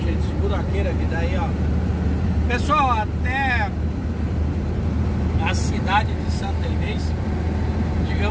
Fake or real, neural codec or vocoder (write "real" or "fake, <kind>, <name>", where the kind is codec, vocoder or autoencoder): real